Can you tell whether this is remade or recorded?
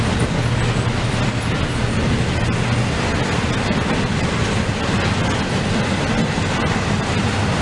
recorded